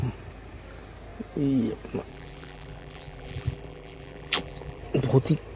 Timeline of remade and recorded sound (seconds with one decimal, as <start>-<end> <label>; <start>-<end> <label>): 0.0-2.1 recorded; 2.1-4.8 remade; 4.8-5.6 recorded